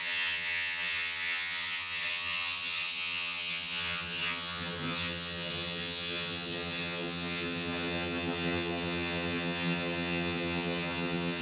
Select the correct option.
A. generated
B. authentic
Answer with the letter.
A